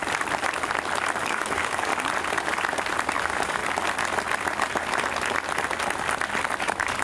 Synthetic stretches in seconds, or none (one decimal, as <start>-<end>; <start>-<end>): 1.2-1.9; 3.2-3.6; 6.6-7.0